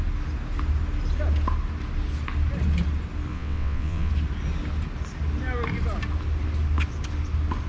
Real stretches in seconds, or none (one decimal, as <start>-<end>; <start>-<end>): 0.0-3.3; 4.1-7.7